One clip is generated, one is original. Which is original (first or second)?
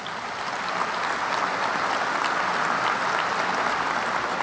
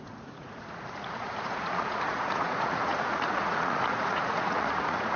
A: first